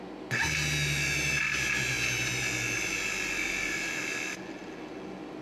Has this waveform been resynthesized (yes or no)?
no